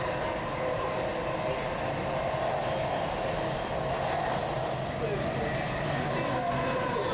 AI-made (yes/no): no